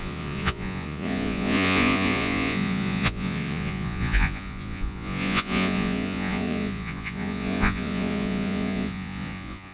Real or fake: fake